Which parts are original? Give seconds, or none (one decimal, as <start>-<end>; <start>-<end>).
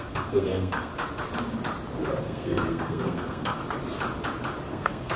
0.9-2.2; 3.6-4.7